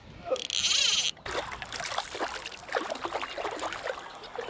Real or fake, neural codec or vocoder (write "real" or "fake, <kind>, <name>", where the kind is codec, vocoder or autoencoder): real